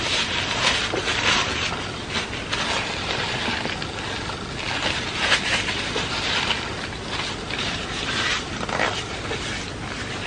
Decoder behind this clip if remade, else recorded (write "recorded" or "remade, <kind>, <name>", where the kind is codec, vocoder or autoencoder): recorded